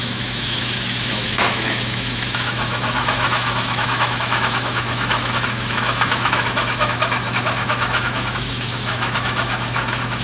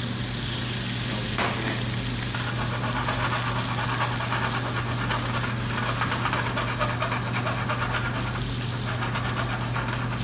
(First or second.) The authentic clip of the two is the second